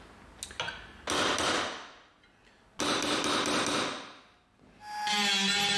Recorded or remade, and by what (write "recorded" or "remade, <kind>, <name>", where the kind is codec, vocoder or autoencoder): recorded